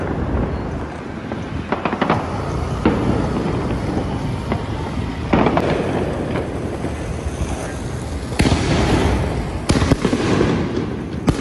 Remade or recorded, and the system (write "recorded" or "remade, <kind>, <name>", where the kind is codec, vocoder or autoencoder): recorded